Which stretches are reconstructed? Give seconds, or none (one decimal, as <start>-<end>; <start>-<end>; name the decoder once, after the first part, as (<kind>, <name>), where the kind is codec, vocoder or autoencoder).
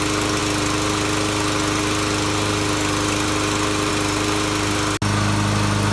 none